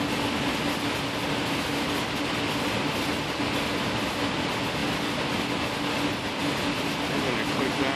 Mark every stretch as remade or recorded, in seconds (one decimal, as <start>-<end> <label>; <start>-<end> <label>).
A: 0.0-8.0 recorded